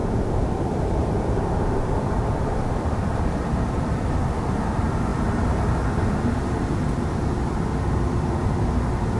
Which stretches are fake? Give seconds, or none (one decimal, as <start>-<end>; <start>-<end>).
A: 0.0-4.6